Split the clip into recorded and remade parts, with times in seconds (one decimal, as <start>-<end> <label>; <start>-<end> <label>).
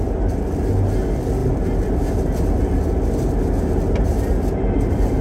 0.0-5.2 recorded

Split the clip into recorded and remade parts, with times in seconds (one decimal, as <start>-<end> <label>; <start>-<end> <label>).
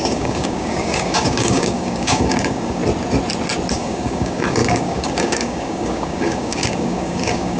0.0-2.8 remade; 2.8-3.7 recorded; 3.7-7.6 remade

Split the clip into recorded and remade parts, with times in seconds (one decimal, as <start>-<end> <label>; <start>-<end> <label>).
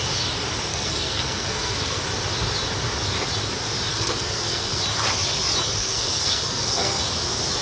0.0-0.7 recorded; 0.7-2.0 remade; 2.0-3.9 recorded; 3.9-4.8 remade; 4.8-5.8 recorded; 5.8-7.0 remade; 7.0-7.6 recorded